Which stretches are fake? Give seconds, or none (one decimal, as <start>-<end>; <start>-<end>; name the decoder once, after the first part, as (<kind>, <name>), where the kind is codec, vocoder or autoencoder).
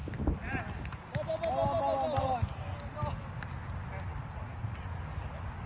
4.1-4.9 (vocoder, BigVGAN v2)